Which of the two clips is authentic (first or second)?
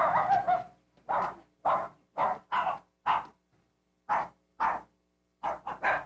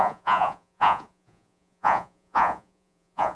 first